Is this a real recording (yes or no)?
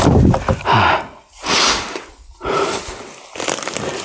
yes